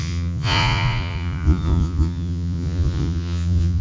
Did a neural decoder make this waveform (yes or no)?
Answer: yes